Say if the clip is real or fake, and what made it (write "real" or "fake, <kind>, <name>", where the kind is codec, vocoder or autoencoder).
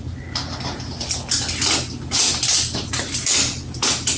real